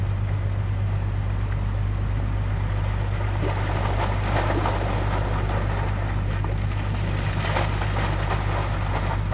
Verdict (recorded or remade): recorded